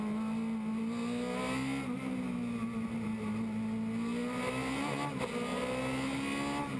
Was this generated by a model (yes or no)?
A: no